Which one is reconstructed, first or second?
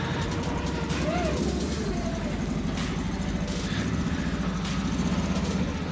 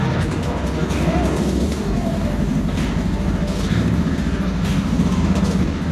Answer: second